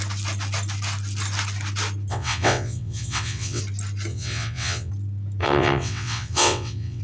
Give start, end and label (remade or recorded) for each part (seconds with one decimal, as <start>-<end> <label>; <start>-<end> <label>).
0.0-2.1 recorded; 2.1-3.6 remade; 3.6-4.1 recorded; 4.1-4.9 remade; 4.9-5.4 recorded; 5.4-7.0 remade